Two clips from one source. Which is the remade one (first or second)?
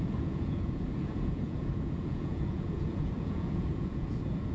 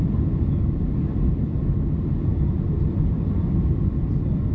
first